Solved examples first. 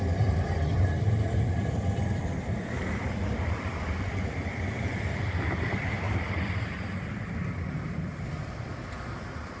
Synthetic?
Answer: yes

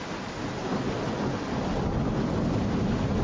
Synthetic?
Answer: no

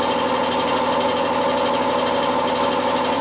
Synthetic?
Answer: no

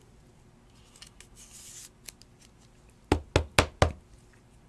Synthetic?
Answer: no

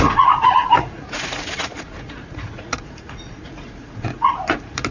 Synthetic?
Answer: yes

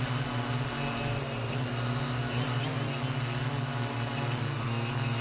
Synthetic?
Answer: no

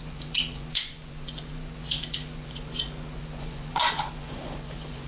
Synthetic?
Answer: yes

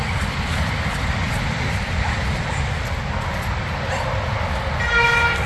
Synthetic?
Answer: no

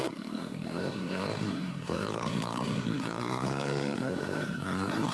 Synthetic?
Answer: yes